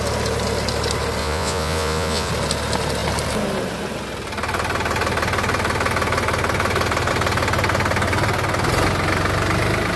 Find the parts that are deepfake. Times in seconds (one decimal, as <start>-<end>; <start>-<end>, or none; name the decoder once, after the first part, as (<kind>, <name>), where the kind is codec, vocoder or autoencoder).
1.2-2.3 (vocoder, Vocos)